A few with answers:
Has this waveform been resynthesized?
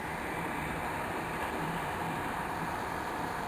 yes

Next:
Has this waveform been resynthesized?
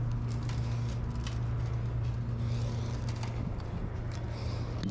no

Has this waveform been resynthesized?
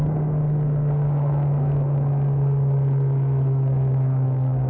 yes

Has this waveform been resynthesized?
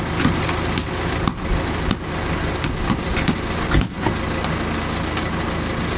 no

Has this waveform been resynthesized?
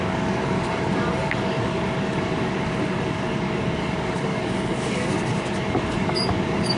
yes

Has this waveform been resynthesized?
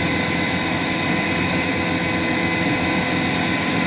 no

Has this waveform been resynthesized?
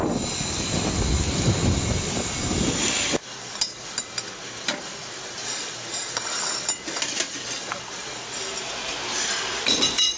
yes